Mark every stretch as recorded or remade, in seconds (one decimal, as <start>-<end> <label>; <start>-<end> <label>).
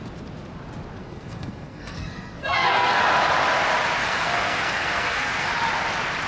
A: 0.0-1.0 recorded; 1.0-3.0 remade; 3.0-4.0 recorded; 4.0-5.5 remade; 5.5-6.3 recorded